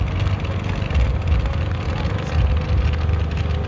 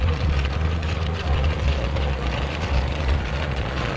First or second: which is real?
first